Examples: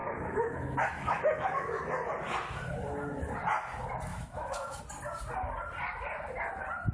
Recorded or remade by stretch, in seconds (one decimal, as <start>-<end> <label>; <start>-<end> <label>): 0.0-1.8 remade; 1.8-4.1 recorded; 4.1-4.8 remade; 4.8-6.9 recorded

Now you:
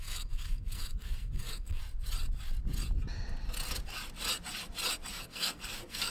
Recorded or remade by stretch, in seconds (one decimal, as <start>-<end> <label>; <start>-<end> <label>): 0.0-1.8 remade; 1.8-5.1 recorded; 5.1-6.1 remade

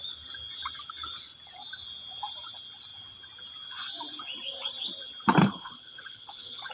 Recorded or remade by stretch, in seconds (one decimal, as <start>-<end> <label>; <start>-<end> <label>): 0.0-5.4 recorded; 5.4-6.7 remade

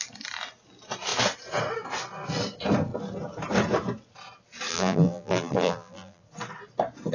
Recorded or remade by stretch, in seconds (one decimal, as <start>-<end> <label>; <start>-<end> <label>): 0.0-4.7 recorded; 4.7-6.2 remade; 6.2-7.1 recorded

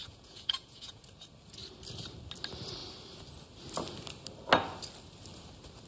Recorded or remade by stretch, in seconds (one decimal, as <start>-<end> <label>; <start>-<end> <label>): 0.0-1.0 remade; 1.0-5.9 recorded

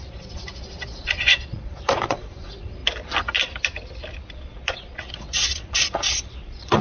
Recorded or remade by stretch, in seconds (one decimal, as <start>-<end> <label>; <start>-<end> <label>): 0.0-2.8 remade; 2.8-4.3 recorded; 4.3-6.8 remade

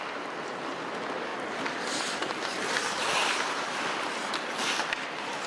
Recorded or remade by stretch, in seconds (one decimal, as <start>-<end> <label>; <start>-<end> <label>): 0.0-5.5 recorded

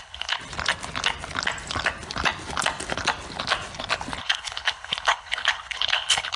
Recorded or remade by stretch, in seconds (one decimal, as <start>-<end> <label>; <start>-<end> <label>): 0.0-0.4 remade; 0.4-4.2 recorded; 4.2-6.4 remade